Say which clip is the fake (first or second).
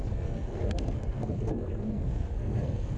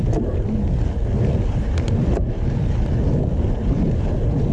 first